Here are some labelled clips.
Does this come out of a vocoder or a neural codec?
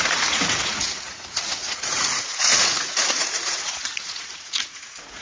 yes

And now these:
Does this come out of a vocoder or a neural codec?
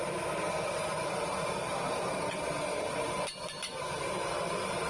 no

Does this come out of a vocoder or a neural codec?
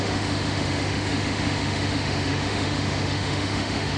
yes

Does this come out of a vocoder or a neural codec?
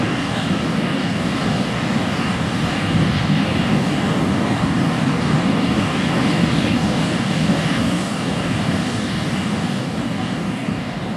yes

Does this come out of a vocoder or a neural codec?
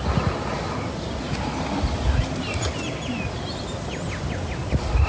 no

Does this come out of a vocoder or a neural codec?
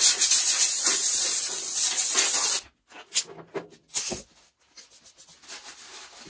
no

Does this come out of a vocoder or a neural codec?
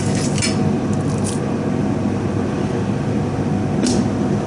no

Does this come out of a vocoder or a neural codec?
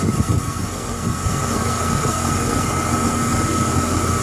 yes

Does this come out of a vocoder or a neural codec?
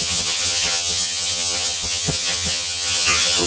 yes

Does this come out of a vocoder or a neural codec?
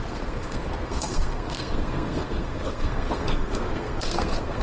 yes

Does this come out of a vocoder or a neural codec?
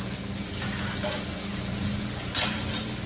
no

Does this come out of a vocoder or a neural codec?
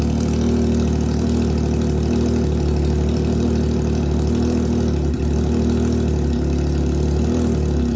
no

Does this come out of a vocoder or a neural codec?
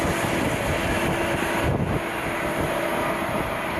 no